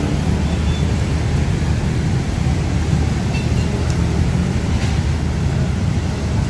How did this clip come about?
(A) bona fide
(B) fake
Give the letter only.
A